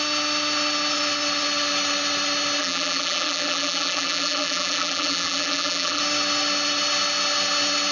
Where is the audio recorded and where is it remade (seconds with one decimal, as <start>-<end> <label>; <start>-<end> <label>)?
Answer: 0.0-2.6 recorded; 2.6-6.0 remade; 6.0-7.9 recorded